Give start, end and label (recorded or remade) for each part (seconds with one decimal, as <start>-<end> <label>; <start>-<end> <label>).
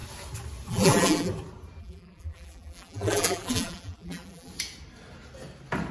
0.0-0.7 recorded; 0.7-1.3 remade; 1.3-1.8 recorded; 1.8-4.5 remade; 4.5-5.9 recorded